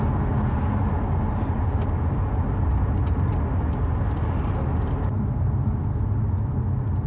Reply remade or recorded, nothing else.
recorded